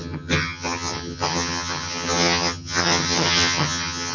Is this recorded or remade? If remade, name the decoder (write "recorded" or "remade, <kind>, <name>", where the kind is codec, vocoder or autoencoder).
remade, vocoder, HiFi-GAN